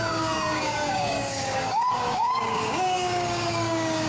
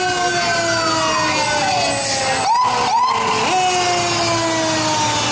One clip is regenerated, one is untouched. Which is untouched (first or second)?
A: second